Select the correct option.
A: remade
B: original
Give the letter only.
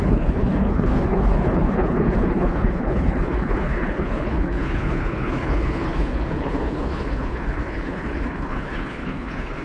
A